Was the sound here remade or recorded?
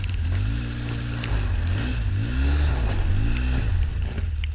recorded